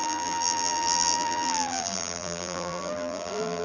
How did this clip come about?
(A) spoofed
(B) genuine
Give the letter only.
A